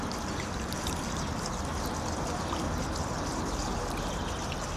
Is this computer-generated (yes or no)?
no